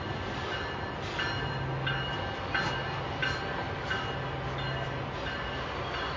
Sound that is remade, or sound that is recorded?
recorded